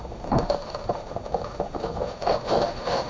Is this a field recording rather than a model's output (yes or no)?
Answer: no